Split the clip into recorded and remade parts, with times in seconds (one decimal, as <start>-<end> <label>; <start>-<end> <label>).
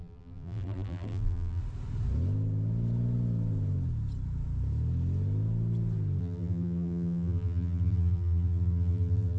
0.0-1.6 remade; 1.6-6.2 recorded; 6.2-9.4 remade